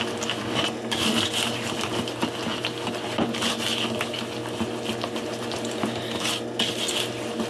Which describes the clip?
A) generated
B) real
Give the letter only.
B